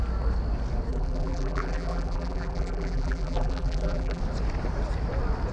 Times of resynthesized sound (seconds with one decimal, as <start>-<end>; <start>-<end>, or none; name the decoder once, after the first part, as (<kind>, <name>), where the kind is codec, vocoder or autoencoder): 0.9-4.2 (vocoder, BigVGAN v2)